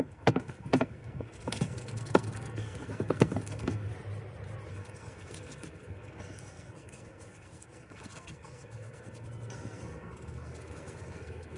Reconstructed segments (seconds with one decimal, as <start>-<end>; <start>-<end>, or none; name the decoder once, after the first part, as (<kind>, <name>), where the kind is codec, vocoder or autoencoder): 0.0-3.9 (codec, SNAC); 4.7-11.6